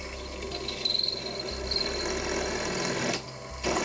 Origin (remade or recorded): recorded